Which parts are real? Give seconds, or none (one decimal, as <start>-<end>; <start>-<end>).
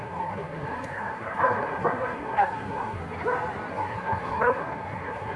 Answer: 3.0-3.7